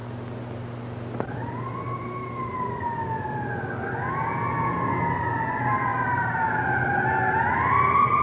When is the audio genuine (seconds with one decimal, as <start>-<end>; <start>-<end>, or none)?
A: 0.0-5.9; 6.5-8.2